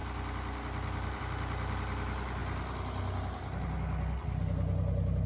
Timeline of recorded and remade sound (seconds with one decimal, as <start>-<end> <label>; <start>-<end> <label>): 0.0-5.3 recorded